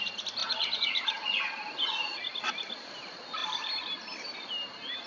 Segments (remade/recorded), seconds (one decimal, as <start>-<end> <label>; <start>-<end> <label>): 0.0-0.4 recorded; 0.4-1.4 remade; 1.4-5.1 recorded